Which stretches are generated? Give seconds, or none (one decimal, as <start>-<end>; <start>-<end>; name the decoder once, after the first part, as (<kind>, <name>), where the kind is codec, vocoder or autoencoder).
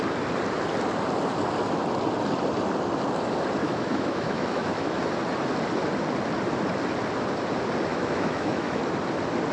3.6-5.0 (autoencoder, DAC-VAE); 7.9-8.8